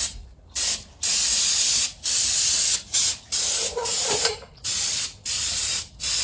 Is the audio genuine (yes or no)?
no